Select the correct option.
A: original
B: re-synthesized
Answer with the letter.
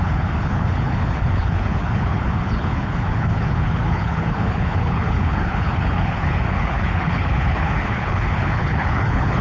B